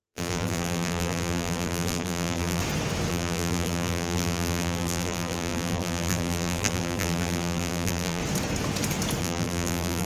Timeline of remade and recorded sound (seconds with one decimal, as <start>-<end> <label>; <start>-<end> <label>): 0.0-2.6 remade; 2.6-3.1 recorded; 3.1-8.2 remade; 8.2-9.2 recorded; 9.2-10.1 remade